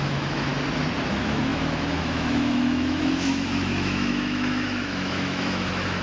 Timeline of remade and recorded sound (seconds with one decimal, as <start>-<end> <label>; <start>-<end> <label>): 0.0-0.5 remade; 0.5-1.1 recorded; 1.1-6.0 remade